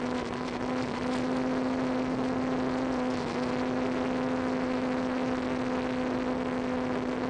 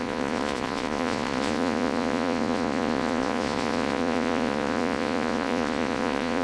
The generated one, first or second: second